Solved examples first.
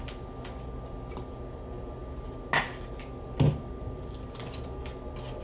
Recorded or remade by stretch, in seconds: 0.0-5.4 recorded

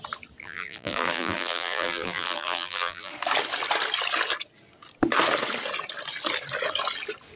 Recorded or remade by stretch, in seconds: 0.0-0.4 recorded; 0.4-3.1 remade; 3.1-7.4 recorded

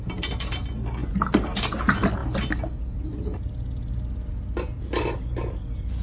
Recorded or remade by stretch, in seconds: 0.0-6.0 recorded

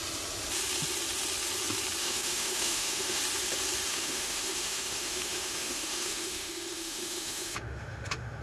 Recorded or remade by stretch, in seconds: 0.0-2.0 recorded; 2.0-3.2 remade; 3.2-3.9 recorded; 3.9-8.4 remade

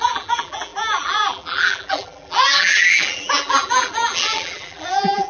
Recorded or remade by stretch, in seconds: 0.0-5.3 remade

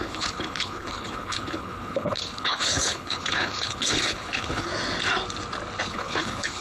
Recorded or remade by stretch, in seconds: 0.0-4.7 remade; 4.7-5.9 recorded; 5.9-6.6 remade

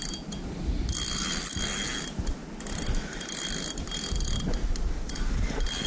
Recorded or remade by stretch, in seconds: 0.0-5.9 recorded